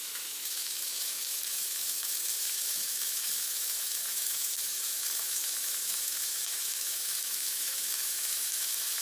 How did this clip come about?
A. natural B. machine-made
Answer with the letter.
B